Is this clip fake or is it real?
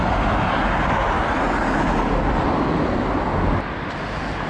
real